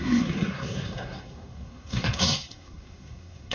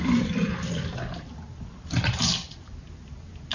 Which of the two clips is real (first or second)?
second